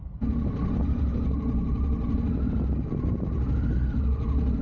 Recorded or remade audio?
recorded